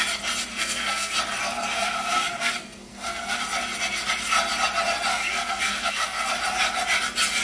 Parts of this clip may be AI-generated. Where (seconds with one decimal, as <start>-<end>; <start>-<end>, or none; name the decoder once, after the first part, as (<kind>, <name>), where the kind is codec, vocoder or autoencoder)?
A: 0.5-1.2 (codec, SNAC); 1.7-3.4; 5.1-6.3

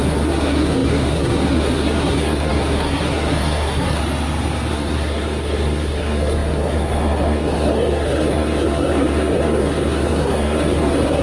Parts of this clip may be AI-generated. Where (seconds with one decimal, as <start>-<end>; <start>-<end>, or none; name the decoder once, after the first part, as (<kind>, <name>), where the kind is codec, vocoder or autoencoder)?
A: 0.0-4.0 (codec, SNAC); 4.7-11.2

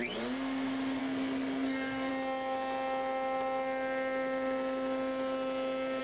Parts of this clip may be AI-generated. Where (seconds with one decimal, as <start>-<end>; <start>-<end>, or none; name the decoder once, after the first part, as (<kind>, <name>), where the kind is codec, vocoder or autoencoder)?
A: 1.0-2.1 (codec, SNAC)

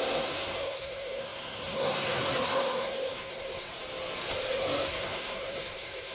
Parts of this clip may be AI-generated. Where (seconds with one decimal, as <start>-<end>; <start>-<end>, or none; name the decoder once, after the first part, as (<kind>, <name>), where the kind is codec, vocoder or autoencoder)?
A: 0.0-3.7 (codec, SNAC); 4.5-6.1

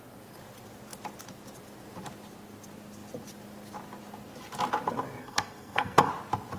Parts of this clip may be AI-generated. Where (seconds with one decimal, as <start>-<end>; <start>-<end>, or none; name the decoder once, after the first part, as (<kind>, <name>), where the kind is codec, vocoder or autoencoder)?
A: 5.2-6.1 (codec, SNAC)